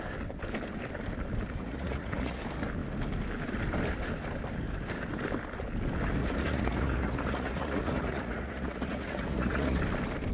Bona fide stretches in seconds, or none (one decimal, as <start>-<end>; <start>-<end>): 0.0-1.6; 2.4-6.2; 9.8-10.3